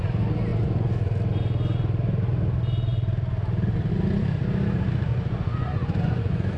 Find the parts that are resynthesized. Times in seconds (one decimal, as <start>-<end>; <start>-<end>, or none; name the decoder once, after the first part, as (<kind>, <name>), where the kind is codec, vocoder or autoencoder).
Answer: 5.1-6.6 (vocoder, Vocos)